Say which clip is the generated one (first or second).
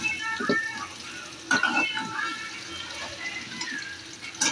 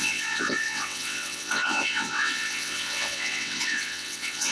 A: second